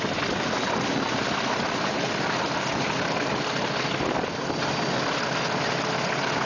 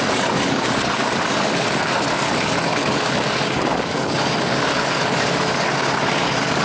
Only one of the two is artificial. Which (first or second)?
second